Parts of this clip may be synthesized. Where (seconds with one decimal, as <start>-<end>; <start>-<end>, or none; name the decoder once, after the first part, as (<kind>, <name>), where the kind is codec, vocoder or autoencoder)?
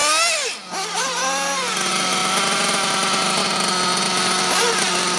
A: none